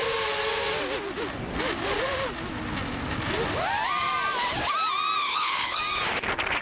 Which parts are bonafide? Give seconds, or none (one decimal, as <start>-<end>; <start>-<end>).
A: 0.0-5.2; 5.8-6.6